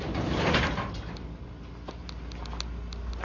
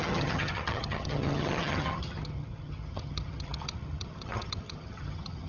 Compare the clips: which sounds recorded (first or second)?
first